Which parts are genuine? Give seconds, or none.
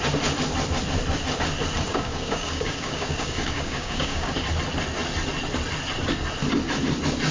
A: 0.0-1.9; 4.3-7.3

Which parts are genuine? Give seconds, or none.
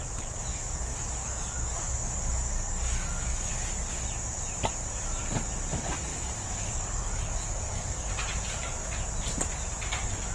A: 0.0-0.5; 3.5-6.1; 8.1-10.3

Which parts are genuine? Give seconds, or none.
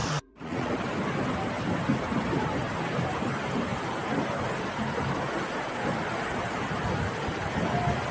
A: 0.7-8.1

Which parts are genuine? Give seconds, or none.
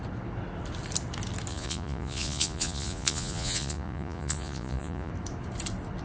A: 0.0-1.5; 5.1-6.0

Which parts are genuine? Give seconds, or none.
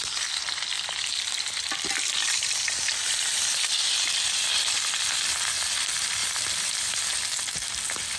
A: 0.0-6.2; 6.9-8.2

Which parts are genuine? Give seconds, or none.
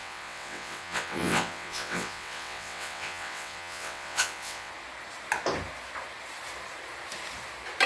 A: 4.7-7.9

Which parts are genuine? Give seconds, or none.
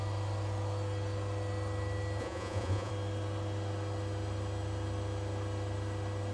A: 0.0-2.2; 2.9-6.3